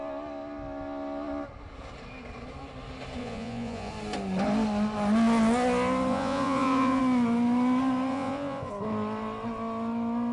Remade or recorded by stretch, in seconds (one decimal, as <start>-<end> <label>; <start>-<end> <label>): 0.0-3.2 recorded; 3.2-3.9 remade; 3.9-6.1 recorded; 6.1-7.0 remade; 7.0-8.1 recorded; 8.1-8.7 remade; 8.7-10.3 recorded